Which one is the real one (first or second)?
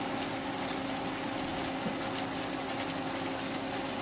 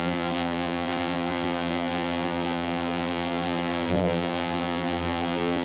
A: first